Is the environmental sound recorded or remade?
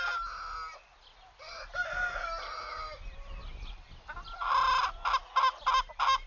recorded